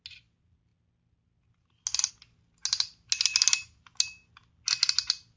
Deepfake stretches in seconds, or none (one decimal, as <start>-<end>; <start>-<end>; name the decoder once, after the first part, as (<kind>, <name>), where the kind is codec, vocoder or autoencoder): none